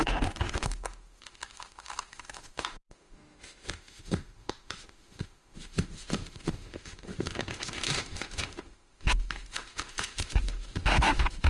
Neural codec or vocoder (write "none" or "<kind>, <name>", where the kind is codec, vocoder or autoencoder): autoencoder, DAC-VAE